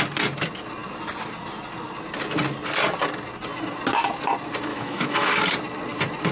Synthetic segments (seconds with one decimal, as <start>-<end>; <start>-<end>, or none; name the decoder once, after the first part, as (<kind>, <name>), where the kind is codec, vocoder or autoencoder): 4.7-5.3 (autoencoder, DAC-VAE)